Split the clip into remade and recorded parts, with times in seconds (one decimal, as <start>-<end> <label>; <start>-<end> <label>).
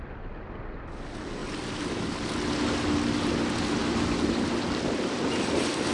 0.0-5.9 recorded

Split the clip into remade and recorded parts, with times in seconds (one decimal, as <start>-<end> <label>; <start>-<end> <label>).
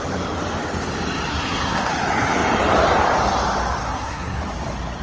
0.0-1.3 recorded; 1.3-1.9 remade; 1.9-3.8 recorded; 3.8-4.4 remade; 4.4-5.0 recorded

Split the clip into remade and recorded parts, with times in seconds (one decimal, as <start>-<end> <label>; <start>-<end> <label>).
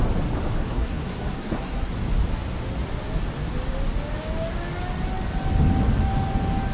0.0-0.6 recorded; 0.6-1.9 remade; 1.9-6.7 recorded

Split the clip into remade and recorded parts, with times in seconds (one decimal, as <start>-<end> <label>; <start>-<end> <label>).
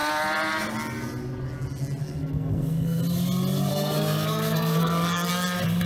0.0-2.0 recorded; 2.0-3.0 remade; 3.0-3.7 recorded; 3.7-5.3 remade; 5.3-5.9 recorded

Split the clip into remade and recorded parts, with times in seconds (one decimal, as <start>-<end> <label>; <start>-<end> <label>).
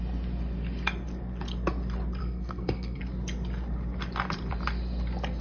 0.0-2.2 recorded; 2.2-3.0 remade; 3.0-5.4 recorded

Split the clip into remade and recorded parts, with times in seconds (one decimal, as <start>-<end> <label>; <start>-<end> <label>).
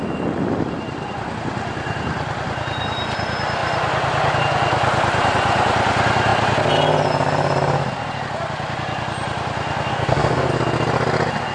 0.0-9.9 recorded; 9.9-10.5 remade; 10.5-11.5 recorded